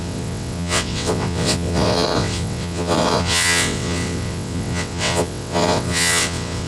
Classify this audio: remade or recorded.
remade